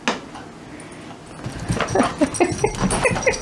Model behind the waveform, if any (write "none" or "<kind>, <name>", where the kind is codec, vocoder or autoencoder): none